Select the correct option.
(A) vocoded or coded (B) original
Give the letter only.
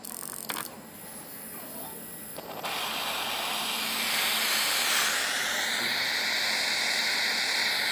B